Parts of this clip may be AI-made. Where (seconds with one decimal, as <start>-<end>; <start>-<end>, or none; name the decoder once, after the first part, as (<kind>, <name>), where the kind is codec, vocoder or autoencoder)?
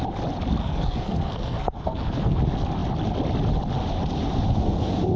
0.6-2.4 (codec, SNAC)